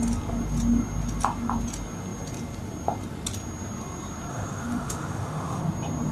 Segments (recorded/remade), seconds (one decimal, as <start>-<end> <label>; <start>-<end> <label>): 0.0-4.3 recorded; 4.3-5.6 remade; 5.6-6.1 recorded